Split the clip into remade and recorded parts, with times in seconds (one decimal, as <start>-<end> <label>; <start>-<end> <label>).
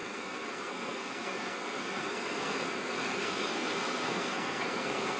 0.0-5.2 remade